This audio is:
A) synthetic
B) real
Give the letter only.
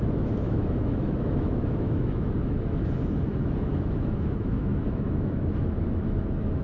A